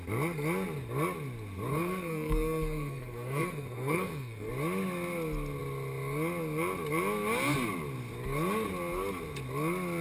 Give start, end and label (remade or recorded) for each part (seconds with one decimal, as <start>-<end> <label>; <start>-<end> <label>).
0.0-1.7 recorded; 1.7-4.5 remade; 4.5-10.0 recorded